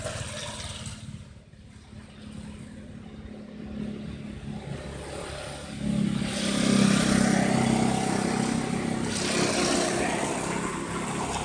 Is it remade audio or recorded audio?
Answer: recorded